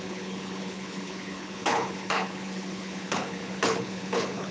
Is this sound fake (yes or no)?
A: yes